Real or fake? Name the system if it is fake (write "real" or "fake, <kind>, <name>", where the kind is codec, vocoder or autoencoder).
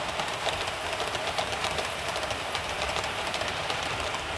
fake, vocoder, BigVGAN v2